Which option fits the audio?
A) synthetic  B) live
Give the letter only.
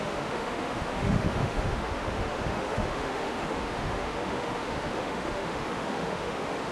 A